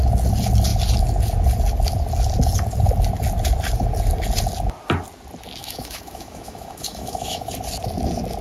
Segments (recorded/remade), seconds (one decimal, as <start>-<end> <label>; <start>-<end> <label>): 0.0-5.6 recorded; 5.6-7.5 remade; 7.5-8.4 recorded